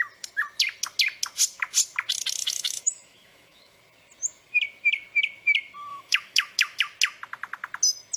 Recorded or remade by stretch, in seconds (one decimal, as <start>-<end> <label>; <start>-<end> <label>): 0.0-2.4 recorded; 2.4-3.8 remade; 3.8-5.9 recorded; 5.9-6.8 remade; 6.8-8.2 recorded